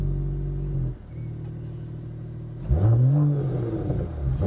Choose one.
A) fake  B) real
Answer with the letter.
B